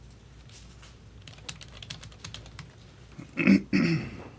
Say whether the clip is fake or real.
real